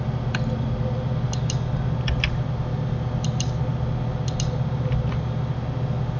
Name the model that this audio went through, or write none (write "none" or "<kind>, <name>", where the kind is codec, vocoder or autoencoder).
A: none